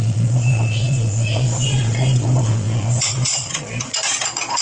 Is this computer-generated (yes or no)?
yes